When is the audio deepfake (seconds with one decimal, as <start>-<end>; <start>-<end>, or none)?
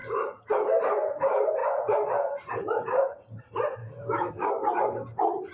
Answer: 0.0-0.5; 3.8-4.5